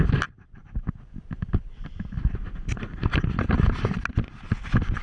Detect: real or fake real